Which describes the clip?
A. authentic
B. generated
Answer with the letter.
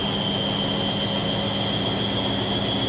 A